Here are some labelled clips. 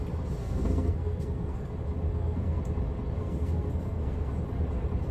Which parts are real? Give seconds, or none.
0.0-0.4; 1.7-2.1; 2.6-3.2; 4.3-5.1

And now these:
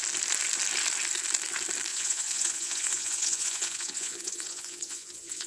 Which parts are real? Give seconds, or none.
0.0-1.9

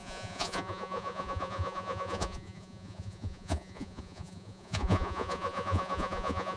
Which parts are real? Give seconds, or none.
none

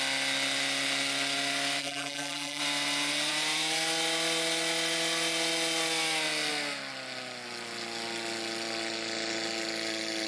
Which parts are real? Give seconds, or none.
0.0-1.8; 2.6-10.3